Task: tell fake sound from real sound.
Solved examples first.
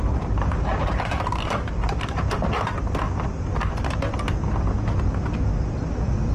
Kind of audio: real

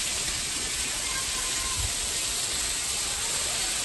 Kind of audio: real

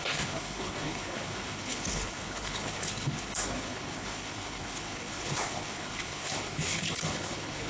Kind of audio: fake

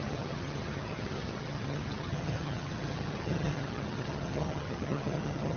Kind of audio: fake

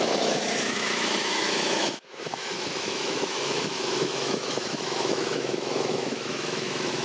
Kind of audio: fake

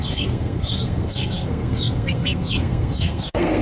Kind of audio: fake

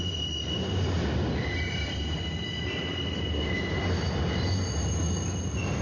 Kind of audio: real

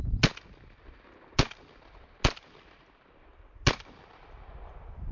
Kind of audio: real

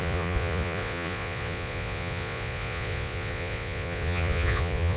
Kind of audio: fake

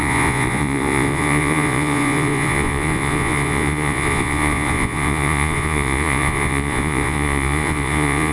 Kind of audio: fake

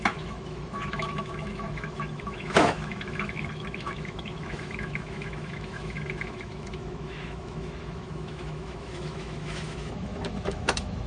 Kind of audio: fake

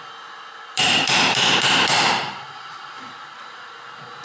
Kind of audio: fake